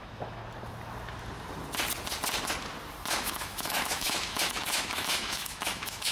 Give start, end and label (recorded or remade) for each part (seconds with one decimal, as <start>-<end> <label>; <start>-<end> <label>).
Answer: 0.0-0.4 remade; 0.4-3.1 recorded; 3.1-6.1 remade